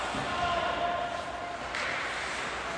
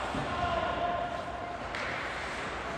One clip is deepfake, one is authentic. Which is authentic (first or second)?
first